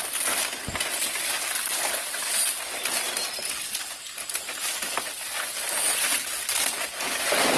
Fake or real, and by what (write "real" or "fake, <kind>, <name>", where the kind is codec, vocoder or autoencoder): real